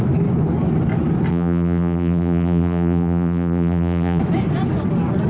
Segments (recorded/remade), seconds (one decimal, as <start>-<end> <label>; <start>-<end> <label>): 0.0-1.3 recorded; 1.3-4.2 remade; 4.2-5.3 recorded